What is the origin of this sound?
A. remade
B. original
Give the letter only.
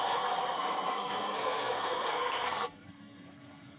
A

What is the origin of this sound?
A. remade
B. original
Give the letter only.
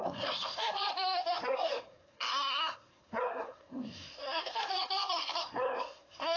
A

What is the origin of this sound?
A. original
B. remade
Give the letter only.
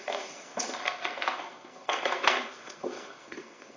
B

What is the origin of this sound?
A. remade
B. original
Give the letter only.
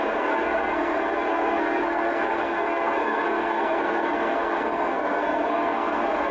A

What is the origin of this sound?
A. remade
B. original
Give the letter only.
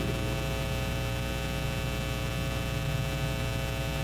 B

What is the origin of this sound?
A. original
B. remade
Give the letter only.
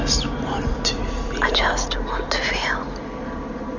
A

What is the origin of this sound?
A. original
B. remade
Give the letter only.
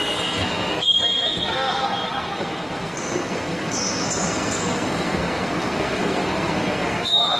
B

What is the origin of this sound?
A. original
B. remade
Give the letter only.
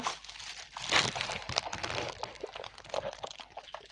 A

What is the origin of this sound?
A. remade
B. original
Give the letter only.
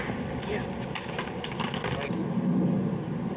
B